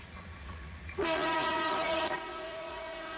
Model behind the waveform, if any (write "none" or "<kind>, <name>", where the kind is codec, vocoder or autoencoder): vocoder, Vocos